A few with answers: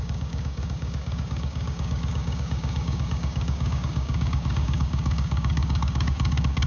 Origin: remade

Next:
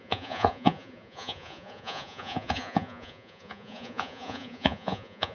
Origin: remade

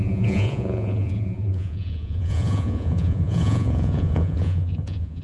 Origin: remade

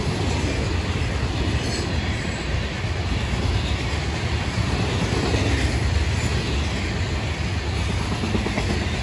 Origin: recorded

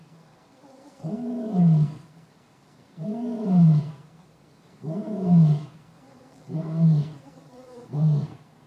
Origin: remade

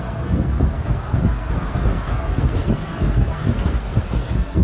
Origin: remade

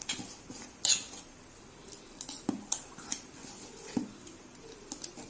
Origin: recorded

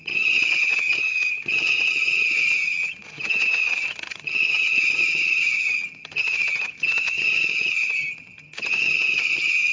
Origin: remade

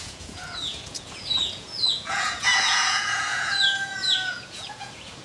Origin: remade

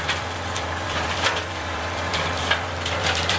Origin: remade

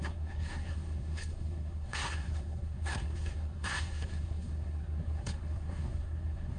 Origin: remade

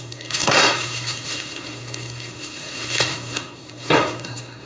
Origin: remade